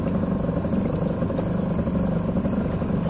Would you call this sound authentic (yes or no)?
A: yes